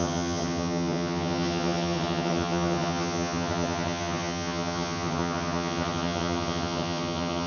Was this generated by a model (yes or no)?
yes